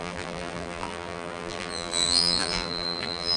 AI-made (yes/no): yes